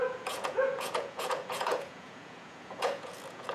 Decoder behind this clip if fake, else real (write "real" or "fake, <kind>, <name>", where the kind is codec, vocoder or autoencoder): fake, vocoder, Vocos